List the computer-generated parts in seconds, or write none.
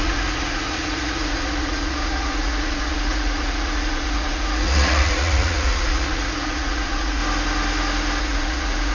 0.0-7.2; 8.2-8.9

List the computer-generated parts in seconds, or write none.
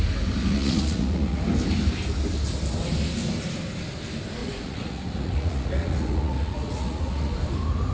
0.5-1.4; 4.4-7.3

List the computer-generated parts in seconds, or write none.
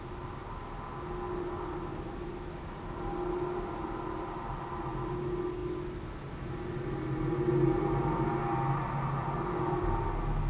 none